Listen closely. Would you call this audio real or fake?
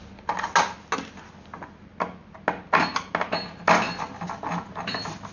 real